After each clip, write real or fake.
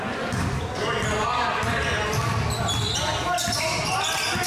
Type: real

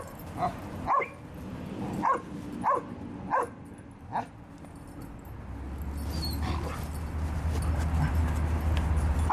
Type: real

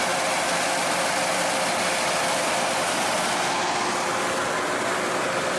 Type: real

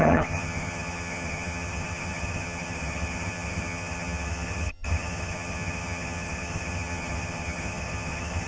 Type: fake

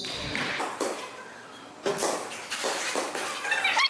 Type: real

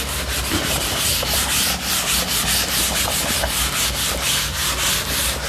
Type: real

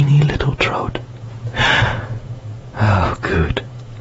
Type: fake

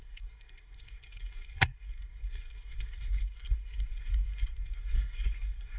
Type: fake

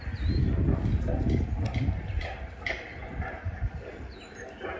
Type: real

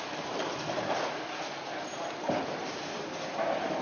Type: real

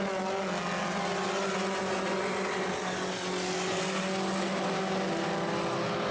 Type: real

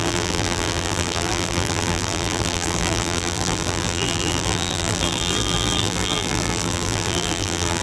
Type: fake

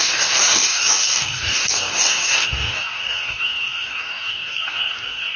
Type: fake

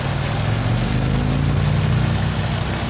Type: real